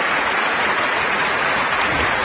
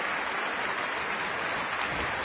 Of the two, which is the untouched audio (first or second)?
second